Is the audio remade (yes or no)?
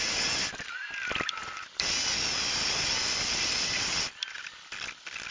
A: yes